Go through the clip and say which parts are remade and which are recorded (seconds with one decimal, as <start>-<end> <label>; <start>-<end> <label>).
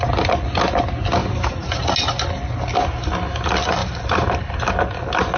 0.0-1.2 recorded; 1.2-1.9 remade; 1.9-3.8 recorded; 3.8-4.7 remade; 4.7-5.4 recorded